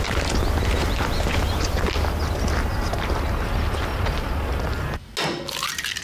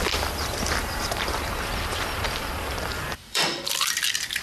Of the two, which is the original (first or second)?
first